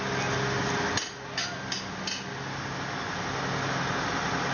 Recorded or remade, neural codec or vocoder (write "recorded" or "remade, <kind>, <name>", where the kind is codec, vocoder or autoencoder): recorded